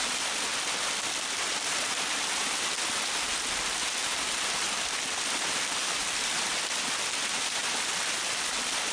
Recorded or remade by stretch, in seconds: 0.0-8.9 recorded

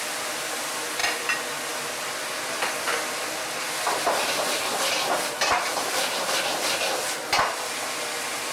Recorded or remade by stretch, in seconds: 0.0-8.5 recorded

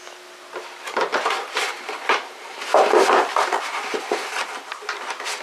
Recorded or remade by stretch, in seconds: 0.0-1.1 recorded; 1.1-4.3 remade; 4.3-5.4 recorded

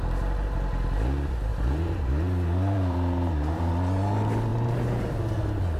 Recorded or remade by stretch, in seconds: 0.0-1.5 recorded; 1.5-3.7 remade; 3.7-4.5 recorded; 4.5-5.2 remade; 5.2-5.8 recorded

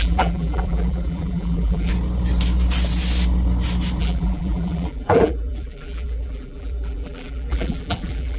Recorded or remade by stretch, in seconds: 0.0-1.9 remade; 1.9-4.0 recorded; 4.0-8.4 remade

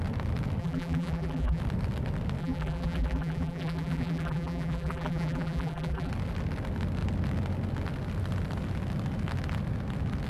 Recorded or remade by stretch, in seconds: 0.0-0.6 recorded; 0.6-1.6 remade; 1.6-2.4 recorded; 2.4-6.1 remade; 6.1-10.3 recorded